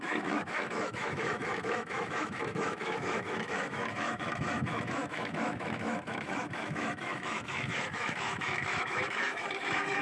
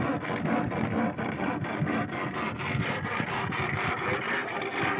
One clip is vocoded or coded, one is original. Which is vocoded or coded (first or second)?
first